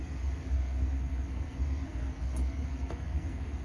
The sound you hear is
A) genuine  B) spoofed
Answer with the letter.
B